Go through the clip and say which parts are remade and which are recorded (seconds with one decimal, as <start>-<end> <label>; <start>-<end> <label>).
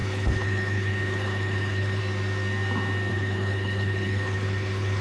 0.0-2.0 remade; 2.0-3.1 recorded; 3.1-5.0 remade